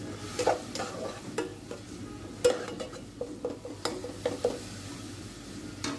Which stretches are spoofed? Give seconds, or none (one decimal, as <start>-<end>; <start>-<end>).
none